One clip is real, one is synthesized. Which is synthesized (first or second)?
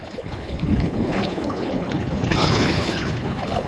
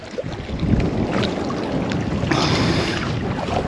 first